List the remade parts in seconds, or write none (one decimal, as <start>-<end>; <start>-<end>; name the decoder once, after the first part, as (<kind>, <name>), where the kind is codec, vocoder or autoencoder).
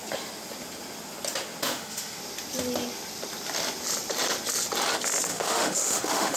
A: 1.7-2.2 (autoencoder, DAC-VAE); 5.3-6.4